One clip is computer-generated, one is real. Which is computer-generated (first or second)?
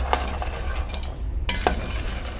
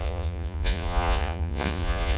second